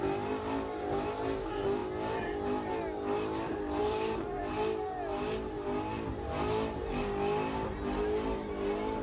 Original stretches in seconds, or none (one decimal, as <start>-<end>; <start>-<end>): 0.0-3.8; 4.4-9.0